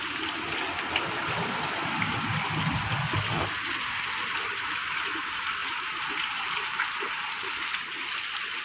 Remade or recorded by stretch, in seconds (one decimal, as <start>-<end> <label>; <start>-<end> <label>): 0.0-5.6 recorded; 5.6-7.3 remade; 7.3-8.6 recorded